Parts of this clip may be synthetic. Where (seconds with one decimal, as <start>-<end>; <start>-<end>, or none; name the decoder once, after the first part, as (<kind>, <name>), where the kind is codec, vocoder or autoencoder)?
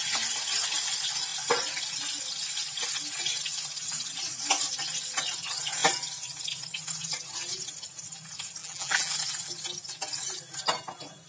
8.6-9.1 (vocoder, BigVGAN v2)